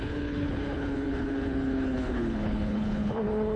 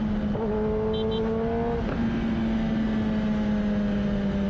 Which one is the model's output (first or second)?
first